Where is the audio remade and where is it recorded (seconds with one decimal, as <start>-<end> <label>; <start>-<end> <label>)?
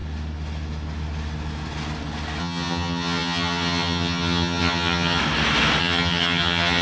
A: 0.0-2.4 recorded; 2.4-5.2 remade; 5.2-5.8 recorded; 5.8-6.8 remade